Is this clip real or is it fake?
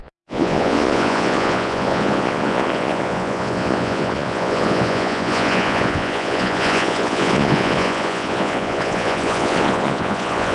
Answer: fake